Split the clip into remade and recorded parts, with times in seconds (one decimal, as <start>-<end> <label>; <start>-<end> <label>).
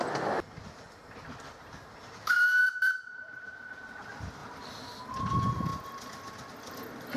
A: 0.0-1.0 recorded; 1.0-3.7 remade; 3.7-7.2 recorded